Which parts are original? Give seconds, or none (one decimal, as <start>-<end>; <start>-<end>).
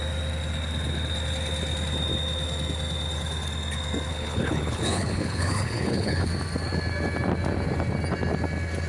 0.0-4.1; 6.3-8.9